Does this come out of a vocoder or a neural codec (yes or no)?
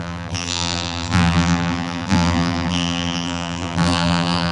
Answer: yes